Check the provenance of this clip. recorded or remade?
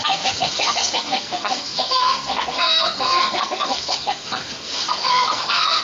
remade